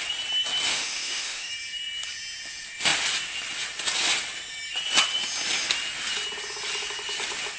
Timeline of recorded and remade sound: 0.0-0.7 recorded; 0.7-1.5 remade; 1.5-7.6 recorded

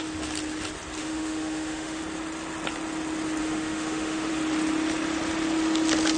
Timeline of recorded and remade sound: 0.0-1.0 recorded; 1.0-2.0 remade; 2.0-3.4 recorded; 3.4-4.3 remade; 4.3-6.2 recorded